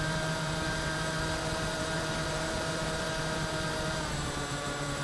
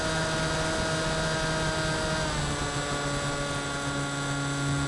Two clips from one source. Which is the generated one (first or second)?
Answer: first